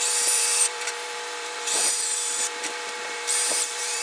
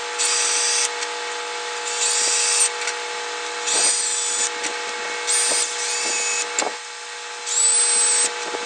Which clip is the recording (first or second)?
second